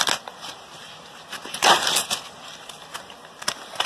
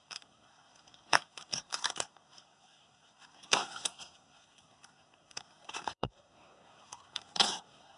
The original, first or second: first